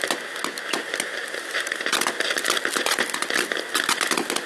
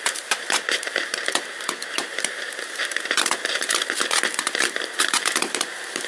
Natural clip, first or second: first